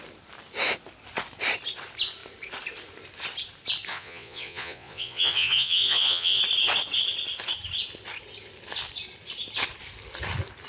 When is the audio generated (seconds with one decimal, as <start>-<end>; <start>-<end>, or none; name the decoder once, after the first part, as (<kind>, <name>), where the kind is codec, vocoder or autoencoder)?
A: 3.9-6.4 (vocoder, Vocos)